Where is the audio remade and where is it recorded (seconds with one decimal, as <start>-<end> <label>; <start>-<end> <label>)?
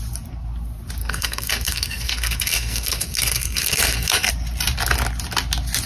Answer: 0.0-1.0 recorded; 1.0-4.3 remade; 4.3-5.9 recorded